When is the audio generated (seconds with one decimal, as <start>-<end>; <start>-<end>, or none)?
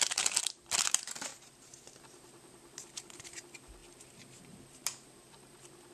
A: 0.0-5.9